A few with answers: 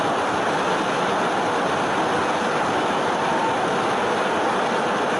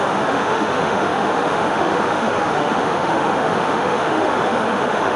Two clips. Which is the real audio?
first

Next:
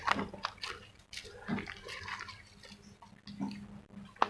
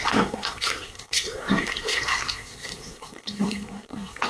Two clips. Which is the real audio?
first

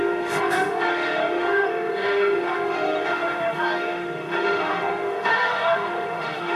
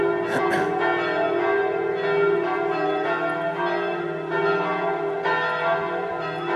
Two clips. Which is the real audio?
second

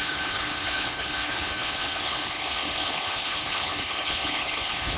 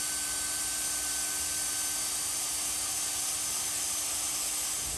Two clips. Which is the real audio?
second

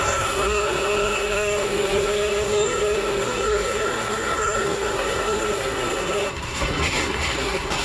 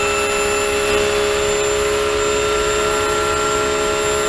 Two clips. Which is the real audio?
second